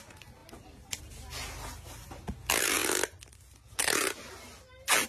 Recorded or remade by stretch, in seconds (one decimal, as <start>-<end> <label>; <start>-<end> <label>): 0.0-5.1 recorded